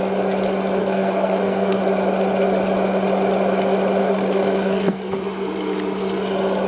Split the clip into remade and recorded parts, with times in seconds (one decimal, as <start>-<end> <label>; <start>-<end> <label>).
0.0-0.8 recorded; 0.8-1.8 remade; 1.8-4.0 recorded; 4.0-5.2 remade; 5.2-6.7 recorded